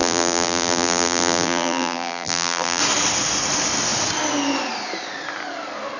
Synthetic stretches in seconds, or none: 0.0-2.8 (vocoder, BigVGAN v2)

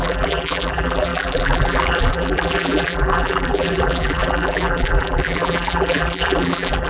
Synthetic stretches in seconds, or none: 0.0-6.9 (vocoder, BigVGAN v2)

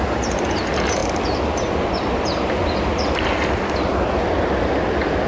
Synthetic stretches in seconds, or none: none

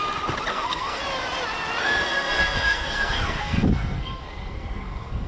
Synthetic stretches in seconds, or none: 0.5-1.0 (codec, SNAC); 1.8-5.3